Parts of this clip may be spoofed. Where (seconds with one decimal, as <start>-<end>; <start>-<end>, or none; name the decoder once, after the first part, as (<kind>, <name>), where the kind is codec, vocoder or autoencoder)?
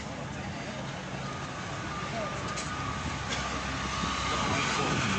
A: none